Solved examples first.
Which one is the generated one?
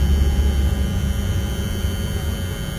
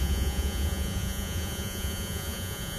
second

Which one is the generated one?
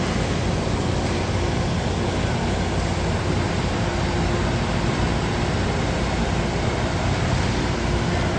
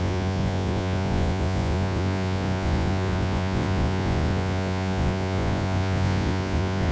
second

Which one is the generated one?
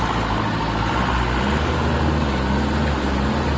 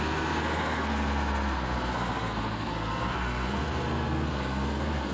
second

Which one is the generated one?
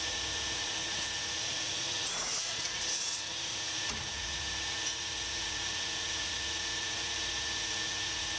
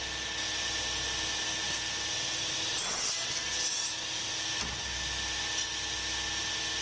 first